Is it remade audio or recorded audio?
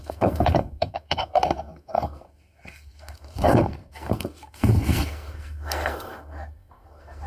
remade